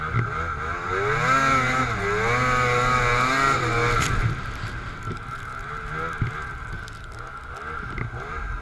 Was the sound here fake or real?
real